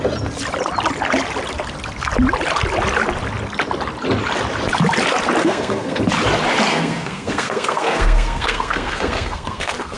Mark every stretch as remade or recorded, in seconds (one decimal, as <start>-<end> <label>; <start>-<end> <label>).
0.0-5.4 recorded; 5.4-6.0 remade; 6.0-6.7 recorded; 6.7-10.0 remade